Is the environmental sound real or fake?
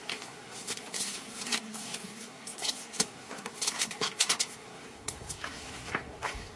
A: fake